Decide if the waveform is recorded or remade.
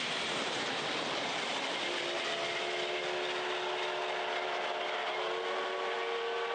recorded